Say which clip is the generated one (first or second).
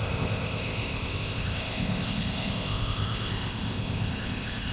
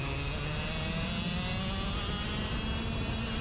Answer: first